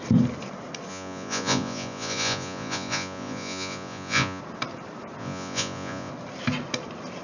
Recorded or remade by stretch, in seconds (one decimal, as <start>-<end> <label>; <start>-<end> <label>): 0.0-0.9 recorded; 0.9-4.4 remade; 4.4-5.2 recorded; 5.2-6.1 remade; 6.1-7.2 recorded